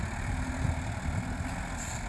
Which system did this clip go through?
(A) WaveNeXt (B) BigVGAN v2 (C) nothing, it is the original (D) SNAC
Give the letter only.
C